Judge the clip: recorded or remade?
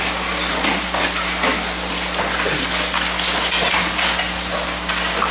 recorded